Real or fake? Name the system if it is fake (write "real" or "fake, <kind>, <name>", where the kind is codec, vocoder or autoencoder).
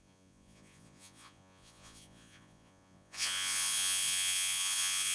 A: fake, vocoder, Vocos